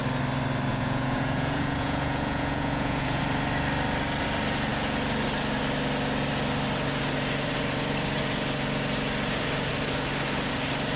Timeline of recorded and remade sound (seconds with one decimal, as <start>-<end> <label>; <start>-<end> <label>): 0.0-0.7 recorded; 0.7-3.2 remade; 3.2-11.0 recorded